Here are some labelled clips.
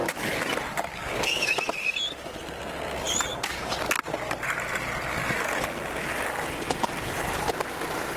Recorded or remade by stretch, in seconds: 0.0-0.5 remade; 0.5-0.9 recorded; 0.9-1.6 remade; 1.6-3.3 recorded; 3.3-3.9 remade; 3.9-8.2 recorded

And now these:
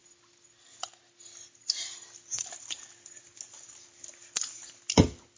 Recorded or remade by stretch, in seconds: 0.0-5.4 recorded

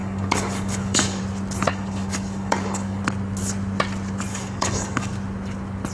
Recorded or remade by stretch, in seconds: 0.0-1.2 remade; 1.2-1.7 recorded; 1.7-3.0 remade; 3.0-4.3 recorded; 4.3-5.1 remade; 5.1-5.9 recorded